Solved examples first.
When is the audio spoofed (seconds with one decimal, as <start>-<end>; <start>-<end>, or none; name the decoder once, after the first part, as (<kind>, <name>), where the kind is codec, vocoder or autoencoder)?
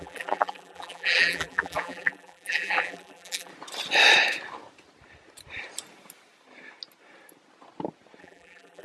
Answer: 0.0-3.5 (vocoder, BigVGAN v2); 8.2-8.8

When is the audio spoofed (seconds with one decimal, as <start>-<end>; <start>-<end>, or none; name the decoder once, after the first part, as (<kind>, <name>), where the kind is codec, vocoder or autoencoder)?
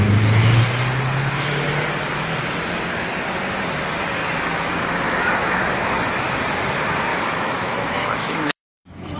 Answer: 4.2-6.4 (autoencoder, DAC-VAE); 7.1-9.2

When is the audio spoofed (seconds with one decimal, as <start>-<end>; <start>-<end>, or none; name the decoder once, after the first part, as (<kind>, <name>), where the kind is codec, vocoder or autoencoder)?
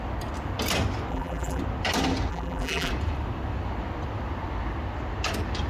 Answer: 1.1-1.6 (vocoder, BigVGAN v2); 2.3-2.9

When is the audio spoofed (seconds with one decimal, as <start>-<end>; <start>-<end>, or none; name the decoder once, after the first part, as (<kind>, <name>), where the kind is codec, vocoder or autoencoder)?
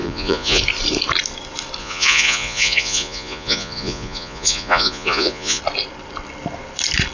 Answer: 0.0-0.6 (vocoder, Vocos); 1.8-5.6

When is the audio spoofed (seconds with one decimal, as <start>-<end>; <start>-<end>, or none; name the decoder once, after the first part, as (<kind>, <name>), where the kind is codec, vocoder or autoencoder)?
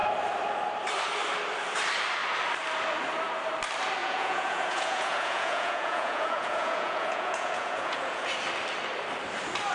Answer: 4.0-8.3 (vocoder, Vocos)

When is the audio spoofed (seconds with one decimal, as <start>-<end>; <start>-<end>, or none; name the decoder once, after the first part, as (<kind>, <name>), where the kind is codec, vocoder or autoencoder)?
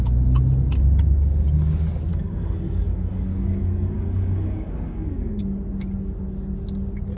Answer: 2.1-5.4 (codec, DAC)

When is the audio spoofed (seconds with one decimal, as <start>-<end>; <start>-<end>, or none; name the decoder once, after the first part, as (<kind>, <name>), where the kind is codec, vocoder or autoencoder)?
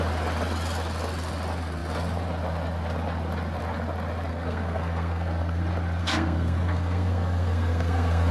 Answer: 4.3-5.6 (codec, SNAC); 6.0-8.3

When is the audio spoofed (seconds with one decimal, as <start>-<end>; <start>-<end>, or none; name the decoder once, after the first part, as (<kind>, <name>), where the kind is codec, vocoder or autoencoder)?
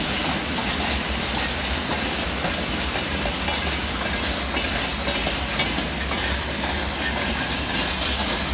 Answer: none